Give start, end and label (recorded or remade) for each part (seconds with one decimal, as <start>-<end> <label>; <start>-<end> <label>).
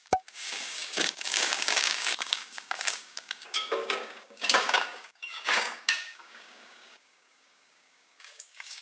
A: 0.0-8.8 remade